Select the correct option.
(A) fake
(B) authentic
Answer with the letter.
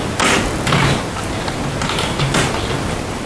B